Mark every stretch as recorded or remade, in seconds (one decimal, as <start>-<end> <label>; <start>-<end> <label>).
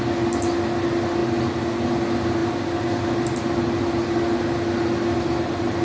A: 0.0-5.8 recorded